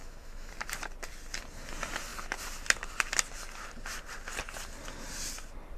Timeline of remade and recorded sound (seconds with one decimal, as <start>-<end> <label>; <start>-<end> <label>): 0.0-0.5 remade; 0.5-5.8 recorded